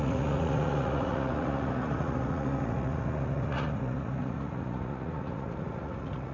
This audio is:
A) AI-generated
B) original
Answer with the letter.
A